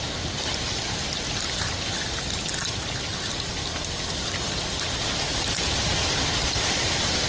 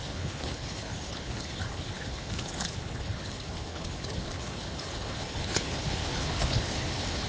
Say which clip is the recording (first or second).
first